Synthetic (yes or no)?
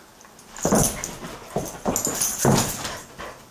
no